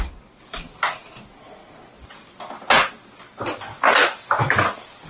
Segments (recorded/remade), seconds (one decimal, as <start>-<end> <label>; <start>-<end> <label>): 0.0-5.1 recorded